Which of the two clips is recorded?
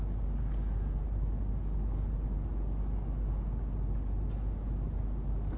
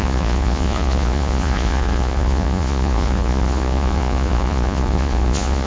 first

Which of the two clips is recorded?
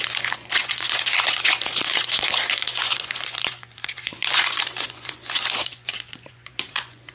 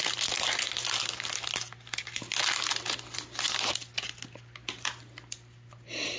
second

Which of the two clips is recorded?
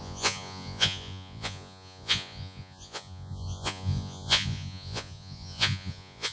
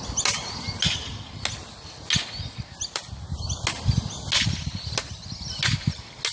second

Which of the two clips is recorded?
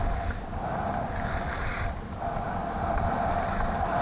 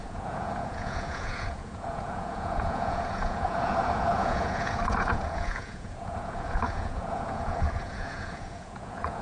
first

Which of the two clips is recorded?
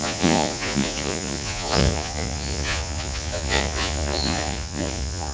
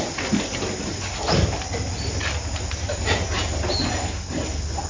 second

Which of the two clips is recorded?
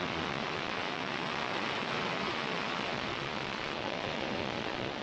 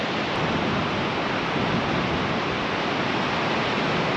second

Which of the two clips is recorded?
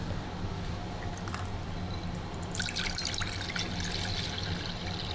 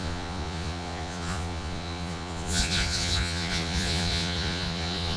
first